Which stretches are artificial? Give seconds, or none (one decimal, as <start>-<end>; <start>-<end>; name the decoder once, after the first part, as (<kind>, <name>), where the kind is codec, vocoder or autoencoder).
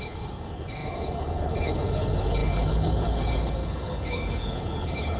0.0-5.2 (codec, HILCodec)